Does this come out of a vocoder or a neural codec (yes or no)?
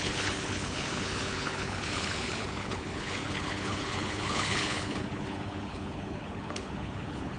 yes